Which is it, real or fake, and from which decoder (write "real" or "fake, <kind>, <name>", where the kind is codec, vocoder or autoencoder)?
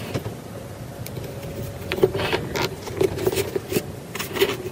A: fake, vocoder, BigVGAN v2